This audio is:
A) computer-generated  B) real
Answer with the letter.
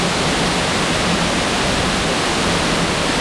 B